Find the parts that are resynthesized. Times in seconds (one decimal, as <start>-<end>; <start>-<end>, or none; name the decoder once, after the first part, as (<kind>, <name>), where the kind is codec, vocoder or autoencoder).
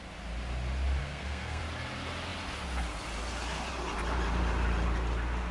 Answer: 1.0-1.6 (codec, SNAC)